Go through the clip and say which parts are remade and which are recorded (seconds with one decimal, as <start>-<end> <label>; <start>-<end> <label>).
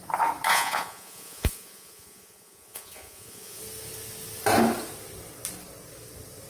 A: 0.0-0.5 recorded; 0.5-3.6 remade; 3.6-6.5 recorded